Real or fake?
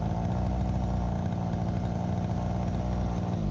real